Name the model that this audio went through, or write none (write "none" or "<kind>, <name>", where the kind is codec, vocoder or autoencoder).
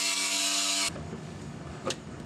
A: codec, DAC